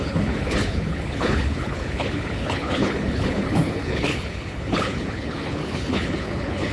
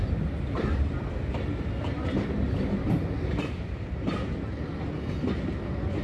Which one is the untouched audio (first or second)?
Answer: second